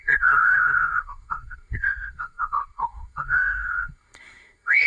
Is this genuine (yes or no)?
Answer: no